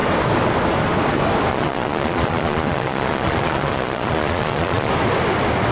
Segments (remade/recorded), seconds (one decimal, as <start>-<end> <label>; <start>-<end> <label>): 0.0-1.5 recorded; 1.5-4.9 remade; 4.9-5.7 recorded